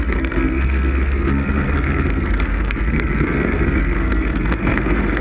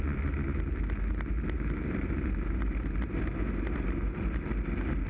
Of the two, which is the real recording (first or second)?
second